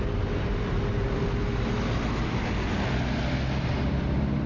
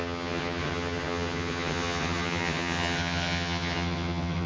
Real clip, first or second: first